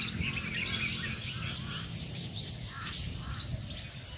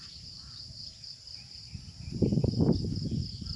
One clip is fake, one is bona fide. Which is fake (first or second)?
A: second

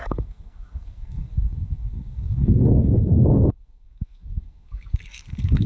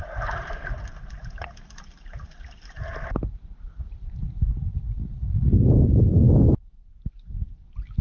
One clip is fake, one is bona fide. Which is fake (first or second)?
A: first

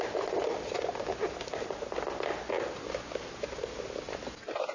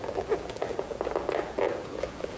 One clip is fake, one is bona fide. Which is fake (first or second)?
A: second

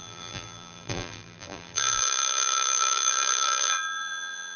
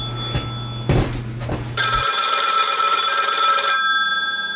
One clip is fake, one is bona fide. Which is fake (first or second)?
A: first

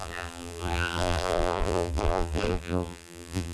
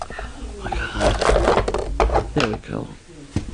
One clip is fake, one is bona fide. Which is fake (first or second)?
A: first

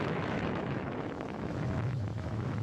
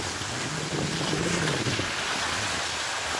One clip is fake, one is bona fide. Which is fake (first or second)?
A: first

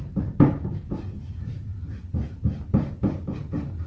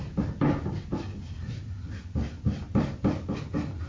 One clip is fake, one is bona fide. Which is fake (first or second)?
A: first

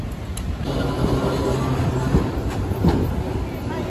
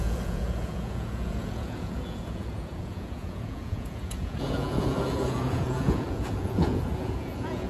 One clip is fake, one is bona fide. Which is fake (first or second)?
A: second